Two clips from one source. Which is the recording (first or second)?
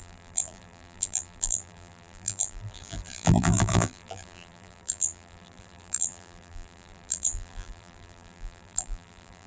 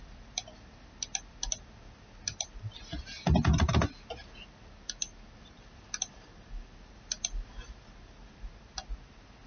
second